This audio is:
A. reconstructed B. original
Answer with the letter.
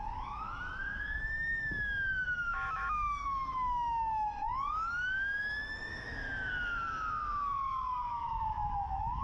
A